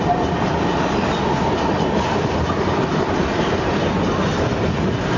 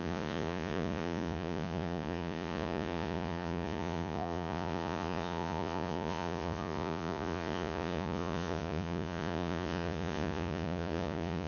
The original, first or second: first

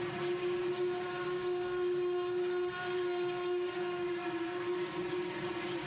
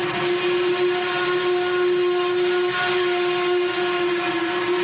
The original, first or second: second